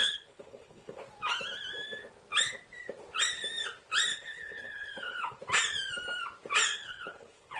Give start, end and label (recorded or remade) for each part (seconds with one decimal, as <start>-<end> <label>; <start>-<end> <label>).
0.0-1.0 remade; 1.0-4.1 recorded; 4.1-5.4 remade; 5.4-6.7 recorded; 6.7-7.6 remade